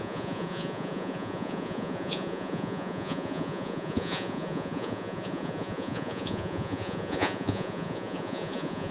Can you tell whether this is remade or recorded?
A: remade